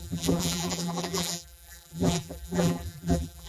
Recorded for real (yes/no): no